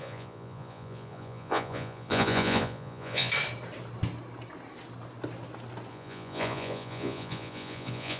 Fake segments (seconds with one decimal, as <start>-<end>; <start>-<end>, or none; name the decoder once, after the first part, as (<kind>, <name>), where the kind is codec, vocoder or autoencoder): 0.0-3.3 (vocoder, Vocos); 5.9-8.2

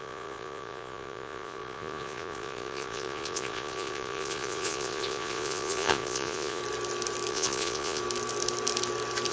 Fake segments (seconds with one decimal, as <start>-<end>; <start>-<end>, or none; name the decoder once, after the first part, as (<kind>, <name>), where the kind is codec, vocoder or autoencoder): 0.0-6.6 (vocoder, Vocos); 7.3-8.0

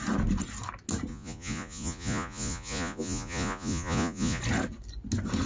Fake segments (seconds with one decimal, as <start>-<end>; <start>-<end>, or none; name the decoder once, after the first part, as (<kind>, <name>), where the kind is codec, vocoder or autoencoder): 1.1-4.4 (vocoder, Vocos)

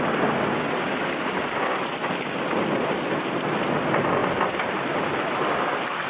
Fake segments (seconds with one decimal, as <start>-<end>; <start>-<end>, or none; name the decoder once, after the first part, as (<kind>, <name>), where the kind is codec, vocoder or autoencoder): none

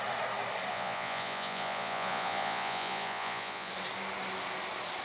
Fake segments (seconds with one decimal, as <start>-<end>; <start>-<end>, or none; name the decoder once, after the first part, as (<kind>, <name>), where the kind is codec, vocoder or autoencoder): 0.7-3.7 (vocoder, Vocos)

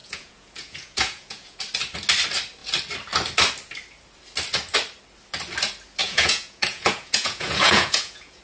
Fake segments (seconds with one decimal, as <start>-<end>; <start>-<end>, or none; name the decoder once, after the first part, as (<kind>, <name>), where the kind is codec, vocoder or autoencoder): 0.0-1.6 (vocoder, Vocos); 6.0-8.4

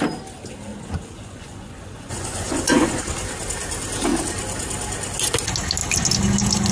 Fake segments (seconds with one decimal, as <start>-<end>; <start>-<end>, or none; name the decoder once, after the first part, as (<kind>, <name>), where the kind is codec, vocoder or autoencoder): 0.7-3.0 (vocoder, Vocos)